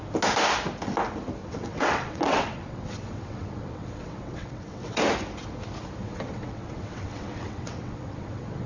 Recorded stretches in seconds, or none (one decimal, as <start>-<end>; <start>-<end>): 0.0-1.4; 5.0-6.0